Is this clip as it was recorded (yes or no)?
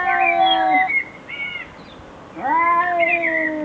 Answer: yes